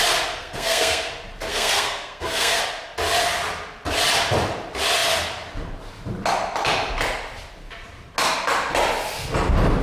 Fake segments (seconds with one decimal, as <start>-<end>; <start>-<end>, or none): 0.4-1.1; 1.5-2.6